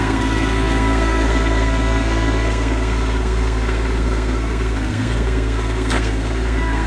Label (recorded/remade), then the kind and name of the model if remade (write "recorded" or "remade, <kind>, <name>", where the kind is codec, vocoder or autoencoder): remade, codec, SNAC